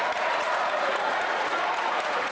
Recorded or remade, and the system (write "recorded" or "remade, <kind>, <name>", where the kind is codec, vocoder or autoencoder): remade, vocoder, Vocos